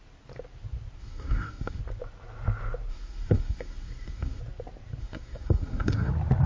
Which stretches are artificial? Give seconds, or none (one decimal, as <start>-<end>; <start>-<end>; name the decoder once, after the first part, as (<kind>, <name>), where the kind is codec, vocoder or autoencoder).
1.0-1.8 (codec, SNAC); 2.9-4.4; 5.0-6.1